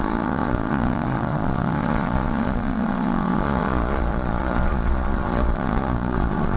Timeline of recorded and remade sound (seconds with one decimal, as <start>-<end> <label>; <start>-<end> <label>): 0.0-6.6 remade